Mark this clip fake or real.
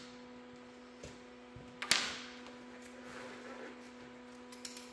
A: real